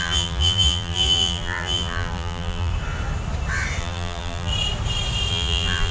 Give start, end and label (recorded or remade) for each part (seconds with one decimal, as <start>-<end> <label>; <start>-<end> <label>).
0.0-2.7 remade; 2.7-3.8 recorded; 3.8-4.5 remade; 4.5-5.3 recorded; 5.3-5.9 remade